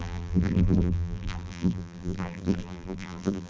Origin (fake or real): fake